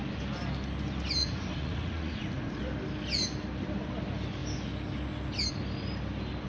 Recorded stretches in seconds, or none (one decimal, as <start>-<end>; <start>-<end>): 0.0-1.2; 2.6-6.5